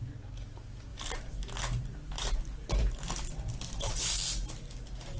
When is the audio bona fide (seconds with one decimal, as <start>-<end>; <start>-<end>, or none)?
0.0-5.2